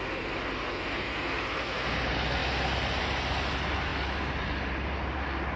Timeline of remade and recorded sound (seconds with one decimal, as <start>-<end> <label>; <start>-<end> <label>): 0.0-5.6 recorded